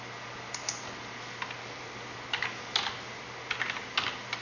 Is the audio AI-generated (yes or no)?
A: no